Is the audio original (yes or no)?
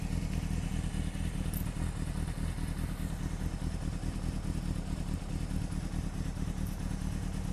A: yes